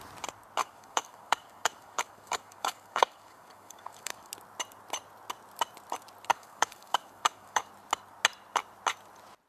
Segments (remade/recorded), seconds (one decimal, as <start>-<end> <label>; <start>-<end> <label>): 0.0-0.6 recorded; 0.6-4.3 remade; 4.3-6.3 recorded; 6.3-7.7 remade; 7.7-9.5 recorded